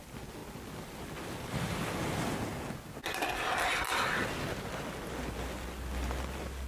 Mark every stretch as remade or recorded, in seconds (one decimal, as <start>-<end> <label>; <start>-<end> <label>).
0.0-6.7 recorded